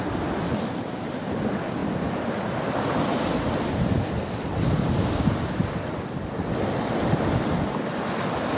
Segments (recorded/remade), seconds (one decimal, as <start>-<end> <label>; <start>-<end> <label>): 0.0-1.8 recorded; 1.8-5.3 remade; 5.3-8.6 recorded